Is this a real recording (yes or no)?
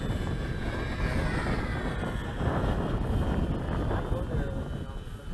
yes